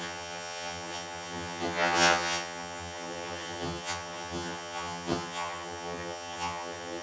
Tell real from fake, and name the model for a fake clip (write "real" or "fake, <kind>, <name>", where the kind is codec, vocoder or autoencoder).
fake, vocoder, HiFi-GAN